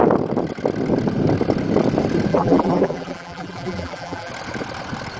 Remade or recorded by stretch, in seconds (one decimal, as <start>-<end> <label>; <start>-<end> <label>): 0.0-2.3 recorded; 2.3-4.3 remade; 4.3-5.2 recorded